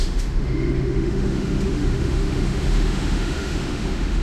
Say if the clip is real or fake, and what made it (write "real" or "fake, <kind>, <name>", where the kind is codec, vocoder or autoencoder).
fake, autoencoder, DAC-VAE